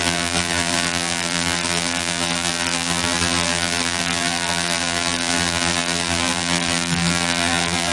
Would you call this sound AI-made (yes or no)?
yes